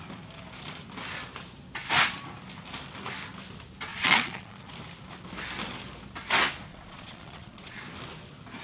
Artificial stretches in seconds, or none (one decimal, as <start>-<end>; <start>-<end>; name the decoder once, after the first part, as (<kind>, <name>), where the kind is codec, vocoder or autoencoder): 3.9-4.7 (vocoder, Vocos); 6.7-7.8